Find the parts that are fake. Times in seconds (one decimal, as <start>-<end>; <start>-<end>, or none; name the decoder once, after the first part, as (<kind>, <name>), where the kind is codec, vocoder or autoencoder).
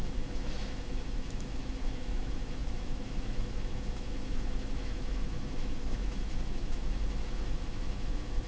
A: 0.0-8.5 (autoencoder, DAC-VAE)